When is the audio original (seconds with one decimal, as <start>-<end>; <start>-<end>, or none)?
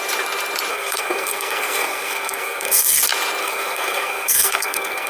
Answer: 0.0-0.7; 3.0-3.4